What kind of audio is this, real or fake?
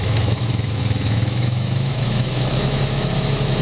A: fake